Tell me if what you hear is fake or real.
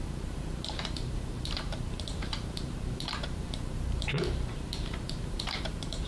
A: fake